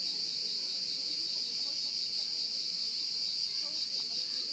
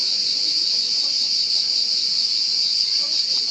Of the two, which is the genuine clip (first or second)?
first